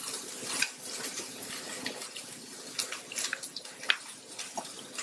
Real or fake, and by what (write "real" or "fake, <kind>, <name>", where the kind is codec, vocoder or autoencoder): real